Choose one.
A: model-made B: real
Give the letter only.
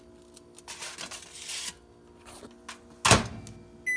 B